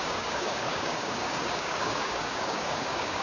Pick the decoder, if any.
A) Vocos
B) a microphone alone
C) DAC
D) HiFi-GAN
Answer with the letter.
C